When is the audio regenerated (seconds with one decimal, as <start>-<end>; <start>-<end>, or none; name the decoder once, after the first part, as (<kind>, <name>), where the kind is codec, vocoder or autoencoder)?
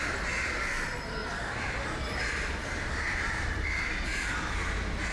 1.2-3.9 (vocoder, BigVGAN v2)